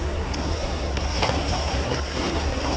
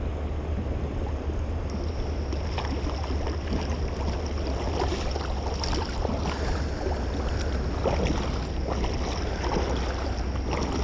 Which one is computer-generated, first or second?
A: first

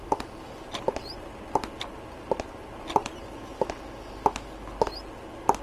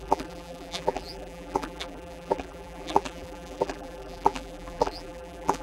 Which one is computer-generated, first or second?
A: second